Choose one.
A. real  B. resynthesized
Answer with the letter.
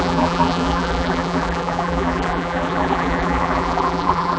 B